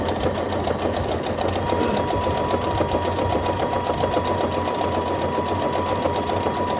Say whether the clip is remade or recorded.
recorded